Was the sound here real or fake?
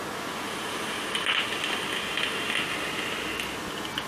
real